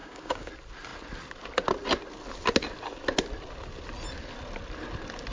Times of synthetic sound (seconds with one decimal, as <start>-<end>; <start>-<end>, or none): 0.0-0.5